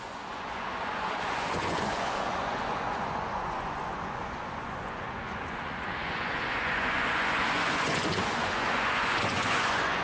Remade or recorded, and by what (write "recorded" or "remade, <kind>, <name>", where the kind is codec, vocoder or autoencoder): remade, vocoder, Vocos